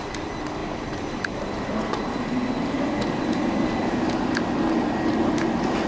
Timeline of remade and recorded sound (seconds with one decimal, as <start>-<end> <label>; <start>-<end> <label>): 0.0-5.9 recorded